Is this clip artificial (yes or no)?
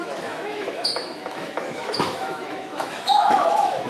yes